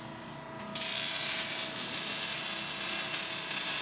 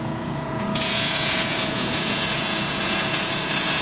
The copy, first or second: second